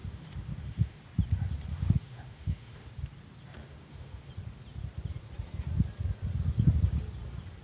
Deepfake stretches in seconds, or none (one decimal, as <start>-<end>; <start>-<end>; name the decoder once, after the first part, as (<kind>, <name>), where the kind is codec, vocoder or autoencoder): 0.0-1.0 (autoencoder, DAC-VAE); 1.7-2.9; 3.6-4.3